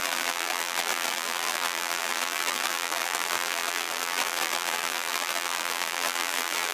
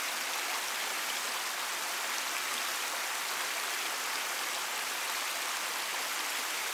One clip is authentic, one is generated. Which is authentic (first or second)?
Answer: second